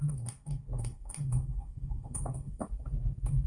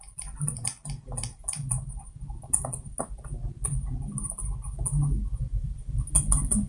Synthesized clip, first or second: first